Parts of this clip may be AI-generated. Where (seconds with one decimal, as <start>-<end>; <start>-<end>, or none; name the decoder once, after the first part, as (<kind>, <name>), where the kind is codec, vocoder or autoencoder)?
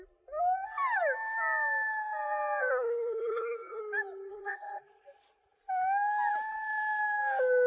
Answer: 2.7-3.8 (codec, SNAC); 4.3-4.8